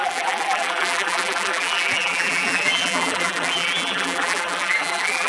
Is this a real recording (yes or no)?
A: no